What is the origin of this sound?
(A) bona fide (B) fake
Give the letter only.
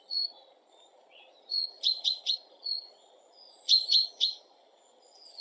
B